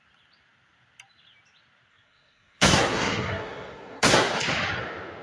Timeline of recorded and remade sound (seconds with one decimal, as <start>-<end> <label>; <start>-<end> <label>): 0.0-1.9 recorded; 1.9-4.3 remade; 4.3-5.2 recorded